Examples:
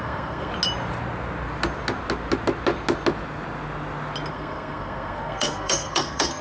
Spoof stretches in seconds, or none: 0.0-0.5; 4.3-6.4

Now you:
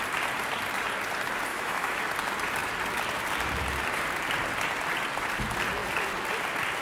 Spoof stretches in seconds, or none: 1.5-2.0

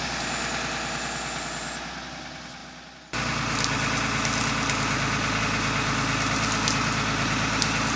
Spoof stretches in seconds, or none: none

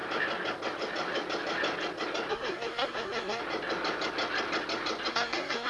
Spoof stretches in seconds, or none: 2.3-3.4; 5.1-5.7